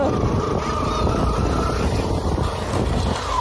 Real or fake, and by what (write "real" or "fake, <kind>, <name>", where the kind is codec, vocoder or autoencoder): real